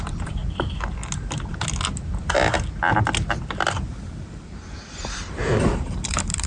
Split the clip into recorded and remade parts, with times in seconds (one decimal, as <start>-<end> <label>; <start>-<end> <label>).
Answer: 0.0-0.4 remade; 0.4-4.3 recorded; 4.3-6.5 remade